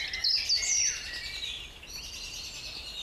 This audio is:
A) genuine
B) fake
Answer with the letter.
A